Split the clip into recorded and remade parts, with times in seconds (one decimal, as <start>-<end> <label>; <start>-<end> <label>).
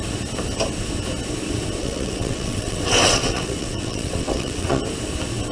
0.0-1.8 recorded; 1.8-4.8 remade; 4.8-5.5 recorded